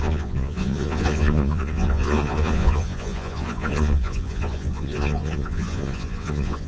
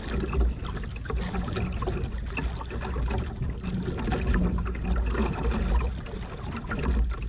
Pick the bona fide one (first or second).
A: second